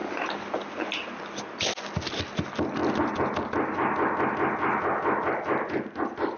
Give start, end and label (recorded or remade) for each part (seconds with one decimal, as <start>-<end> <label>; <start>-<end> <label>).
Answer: 0.0-6.4 recorded